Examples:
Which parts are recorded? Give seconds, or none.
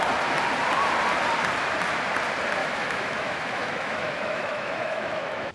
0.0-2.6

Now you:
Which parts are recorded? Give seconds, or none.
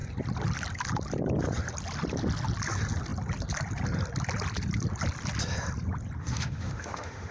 0.0-6.2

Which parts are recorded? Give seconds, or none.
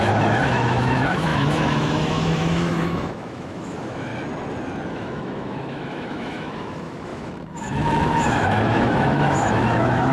4.1-4.9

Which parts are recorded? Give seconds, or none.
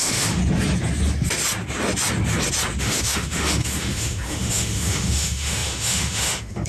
0.4-2.8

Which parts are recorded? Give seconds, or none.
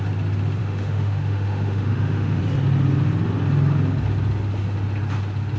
0.0-0.6; 2.4-5.6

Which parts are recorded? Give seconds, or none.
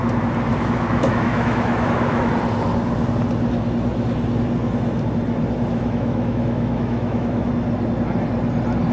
0.0-0.5; 2.3-5.7; 7.5-8.9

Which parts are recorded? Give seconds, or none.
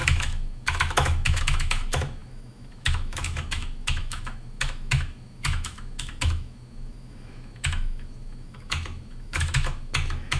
none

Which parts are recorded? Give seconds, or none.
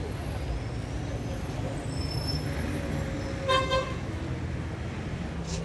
0.0-3.6; 4.2-5.6